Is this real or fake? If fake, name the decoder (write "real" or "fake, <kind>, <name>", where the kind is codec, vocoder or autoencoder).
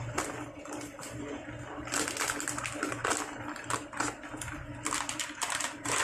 real